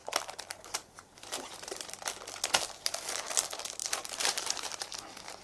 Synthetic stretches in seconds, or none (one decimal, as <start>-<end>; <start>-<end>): 0.0-1.9; 3.8-4.9